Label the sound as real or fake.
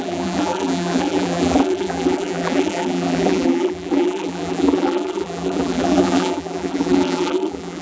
fake